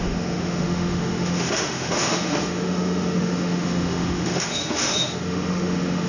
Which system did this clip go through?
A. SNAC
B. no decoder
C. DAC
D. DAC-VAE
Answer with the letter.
D